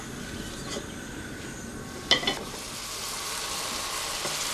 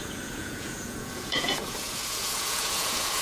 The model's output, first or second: second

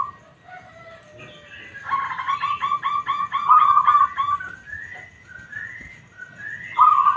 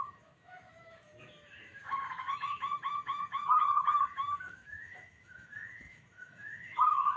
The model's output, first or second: second